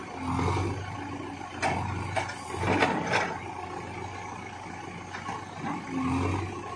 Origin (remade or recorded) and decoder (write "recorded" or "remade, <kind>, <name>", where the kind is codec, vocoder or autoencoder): recorded